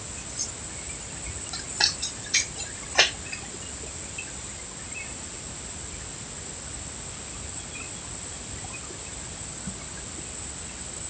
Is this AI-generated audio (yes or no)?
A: no